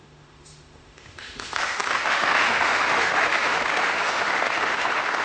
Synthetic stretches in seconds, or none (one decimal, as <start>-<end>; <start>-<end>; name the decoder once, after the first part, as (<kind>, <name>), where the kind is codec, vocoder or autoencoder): 0.0-5.2 (autoencoder, DAC-VAE)